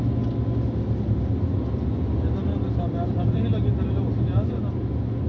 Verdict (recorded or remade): recorded